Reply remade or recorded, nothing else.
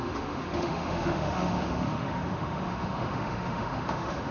remade